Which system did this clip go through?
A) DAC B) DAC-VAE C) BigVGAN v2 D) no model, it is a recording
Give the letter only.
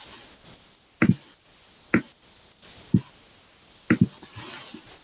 D